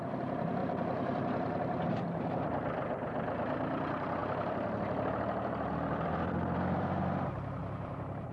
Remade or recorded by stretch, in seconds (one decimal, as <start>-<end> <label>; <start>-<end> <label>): 0.0-0.6 recorded; 0.6-2.0 remade; 2.0-4.2 recorded; 4.2-7.0 remade; 7.0-7.6 recorded; 7.6-8.3 remade